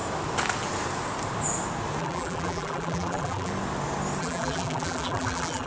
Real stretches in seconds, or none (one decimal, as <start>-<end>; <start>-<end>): 0.0-2.0; 3.5-4.2